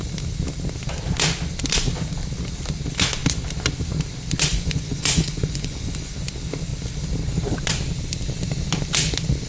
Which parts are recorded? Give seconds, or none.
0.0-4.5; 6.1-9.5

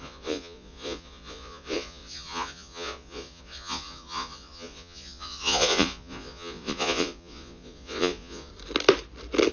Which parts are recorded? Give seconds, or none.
8.5-9.5

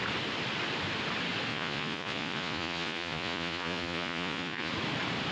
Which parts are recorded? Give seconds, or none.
0.0-1.5; 4.7-5.3

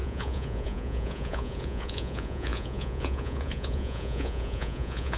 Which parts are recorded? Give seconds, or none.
none

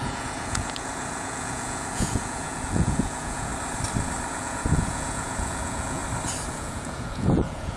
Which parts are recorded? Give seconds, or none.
3.5-4.3; 6.0-6.5